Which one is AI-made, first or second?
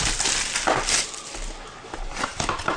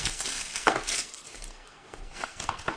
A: second